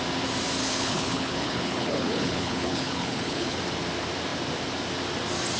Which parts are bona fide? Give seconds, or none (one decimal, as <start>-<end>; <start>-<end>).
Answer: 0.0-0.6; 3.6-5.6

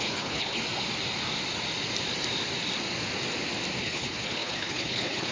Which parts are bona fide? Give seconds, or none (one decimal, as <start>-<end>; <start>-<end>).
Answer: 0.6-3.8

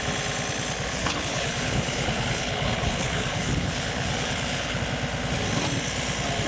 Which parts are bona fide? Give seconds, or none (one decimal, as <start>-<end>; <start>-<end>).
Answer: 0.0-0.9; 4.8-6.5

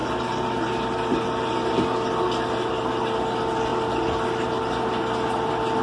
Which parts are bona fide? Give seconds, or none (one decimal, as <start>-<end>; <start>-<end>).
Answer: 0.0-5.8

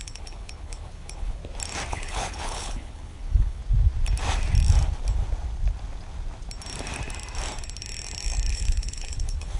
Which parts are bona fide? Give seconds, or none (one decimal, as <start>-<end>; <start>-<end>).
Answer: 1.4-1.9; 3.6-8.5

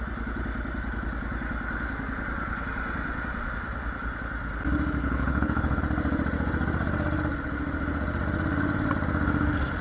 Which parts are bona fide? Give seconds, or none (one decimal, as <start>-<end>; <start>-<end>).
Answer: 0.0-5.0; 5.8-9.8